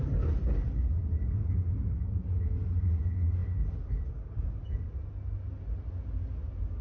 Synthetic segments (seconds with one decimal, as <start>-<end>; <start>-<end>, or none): none